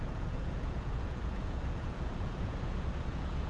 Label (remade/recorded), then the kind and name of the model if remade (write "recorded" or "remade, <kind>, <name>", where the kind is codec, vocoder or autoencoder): remade, vocoder, Vocos